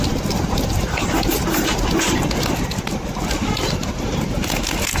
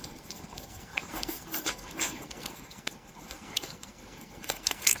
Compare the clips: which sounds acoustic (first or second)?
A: first